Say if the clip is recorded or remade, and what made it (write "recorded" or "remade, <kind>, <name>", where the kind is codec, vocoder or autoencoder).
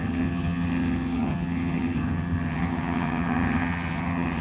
remade, vocoder, HiFi-GAN